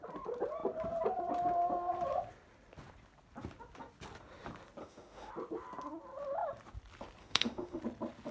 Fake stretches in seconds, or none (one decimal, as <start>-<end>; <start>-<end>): 4.8-5.3; 7.2-7.8